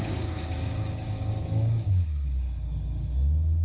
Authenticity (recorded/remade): remade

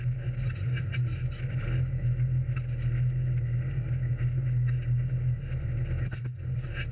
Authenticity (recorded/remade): recorded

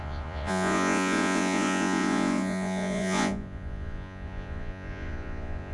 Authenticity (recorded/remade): remade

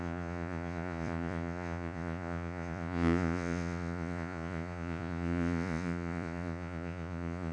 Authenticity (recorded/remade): remade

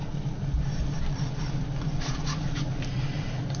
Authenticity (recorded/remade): recorded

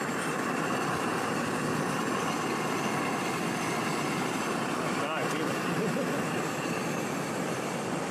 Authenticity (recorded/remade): recorded